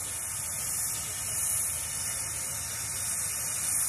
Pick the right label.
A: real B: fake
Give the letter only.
A